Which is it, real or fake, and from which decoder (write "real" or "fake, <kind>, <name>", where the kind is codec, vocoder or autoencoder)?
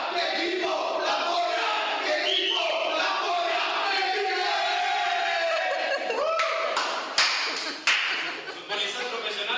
real